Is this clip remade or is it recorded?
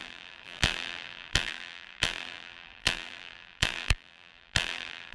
remade